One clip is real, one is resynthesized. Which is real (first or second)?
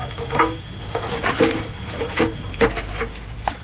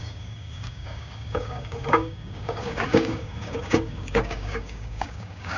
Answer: first